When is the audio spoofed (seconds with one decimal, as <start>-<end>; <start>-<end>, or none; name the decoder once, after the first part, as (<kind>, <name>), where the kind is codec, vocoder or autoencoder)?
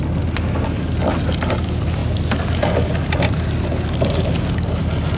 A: none